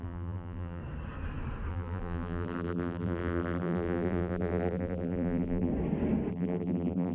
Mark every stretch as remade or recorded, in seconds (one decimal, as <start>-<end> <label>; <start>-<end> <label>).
0.0-0.8 remade; 0.8-1.7 recorded; 1.7-5.7 remade; 5.7-6.3 recorded; 6.3-7.1 remade